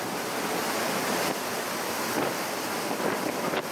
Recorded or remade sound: recorded